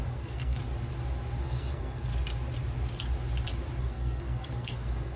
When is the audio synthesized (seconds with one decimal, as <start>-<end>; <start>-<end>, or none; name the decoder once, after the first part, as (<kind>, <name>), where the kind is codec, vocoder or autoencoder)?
0.0-0.6 (codec, SNAC); 1.4-2.1; 3.8-5.2